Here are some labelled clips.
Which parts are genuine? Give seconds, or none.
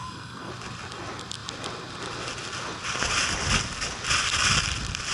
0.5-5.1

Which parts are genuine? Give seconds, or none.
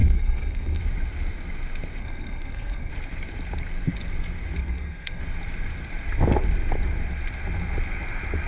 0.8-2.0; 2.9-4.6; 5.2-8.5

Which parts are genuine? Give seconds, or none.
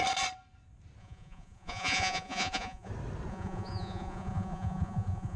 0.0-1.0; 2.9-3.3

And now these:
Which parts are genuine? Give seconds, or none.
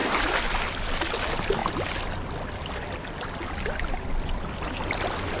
0.0-5.4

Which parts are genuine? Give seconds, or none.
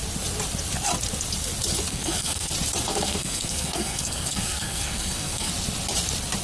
0.0-1.9; 2.5-2.9; 5.5-6.4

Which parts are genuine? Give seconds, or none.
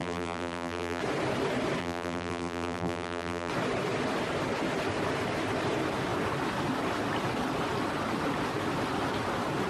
1.0-1.8; 3.5-9.7